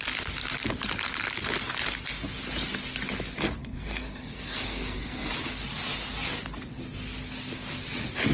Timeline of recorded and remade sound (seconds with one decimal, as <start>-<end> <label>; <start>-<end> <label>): 0.0-3.6 recorded; 3.6-5.3 remade; 5.3-8.3 recorded